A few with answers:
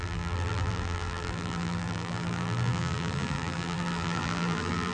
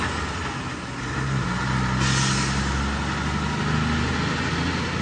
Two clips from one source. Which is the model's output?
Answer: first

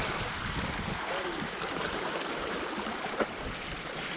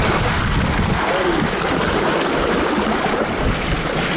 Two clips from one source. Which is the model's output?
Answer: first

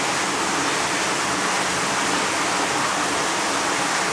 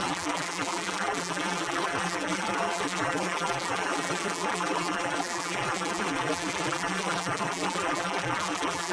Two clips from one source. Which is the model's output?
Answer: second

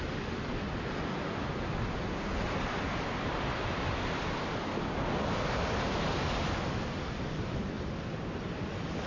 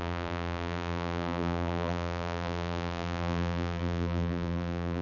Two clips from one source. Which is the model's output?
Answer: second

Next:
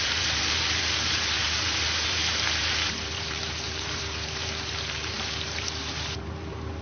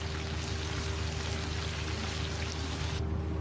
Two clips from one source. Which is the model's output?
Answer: first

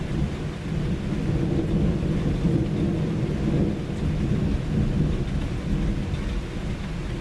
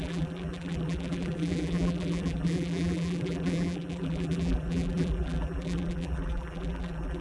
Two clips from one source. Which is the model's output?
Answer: second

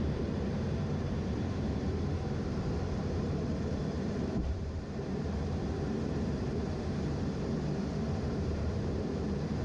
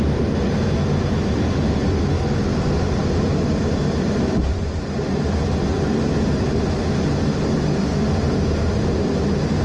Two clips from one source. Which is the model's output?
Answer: first